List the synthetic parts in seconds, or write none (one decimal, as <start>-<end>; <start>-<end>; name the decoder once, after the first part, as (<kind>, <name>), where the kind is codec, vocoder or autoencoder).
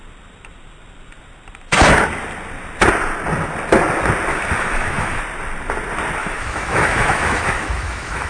4.3-5.2 (autoencoder, DAC-VAE); 6.2-8.3